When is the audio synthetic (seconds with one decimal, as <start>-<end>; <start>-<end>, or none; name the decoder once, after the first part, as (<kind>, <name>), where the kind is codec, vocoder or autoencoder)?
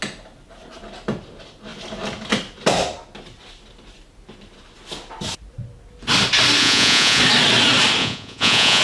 6.6-7.2 (vocoder, Vocos); 8.0-8.8